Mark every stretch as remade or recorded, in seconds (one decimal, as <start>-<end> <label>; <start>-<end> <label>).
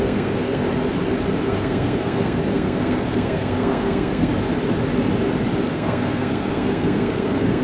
0.0-0.6 remade; 0.6-1.5 recorded; 1.5-4.3 remade; 4.3-5.7 recorded; 5.7-7.6 remade